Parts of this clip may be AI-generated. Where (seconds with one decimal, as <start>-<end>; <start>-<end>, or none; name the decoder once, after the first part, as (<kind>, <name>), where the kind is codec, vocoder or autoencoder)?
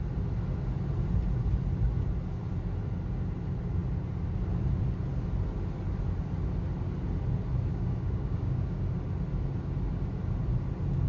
7.7-8.8 (codec, DAC)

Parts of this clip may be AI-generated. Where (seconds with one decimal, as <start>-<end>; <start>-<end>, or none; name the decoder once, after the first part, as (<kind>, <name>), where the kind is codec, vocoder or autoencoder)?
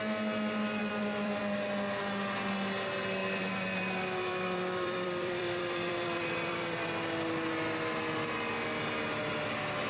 0.8-1.4 (vocoder, BigVGAN v2); 3.2-6.9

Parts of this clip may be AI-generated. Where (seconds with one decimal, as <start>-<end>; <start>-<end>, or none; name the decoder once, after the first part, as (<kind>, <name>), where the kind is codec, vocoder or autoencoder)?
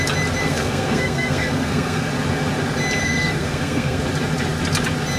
0.4-2.1 (codec, SNAC); 3.0-4.0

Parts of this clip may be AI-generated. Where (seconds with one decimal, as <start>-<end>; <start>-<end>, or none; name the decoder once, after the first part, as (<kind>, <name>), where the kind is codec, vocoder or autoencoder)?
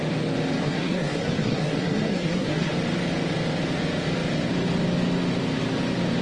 0.6-2.7 (codec, SNAC)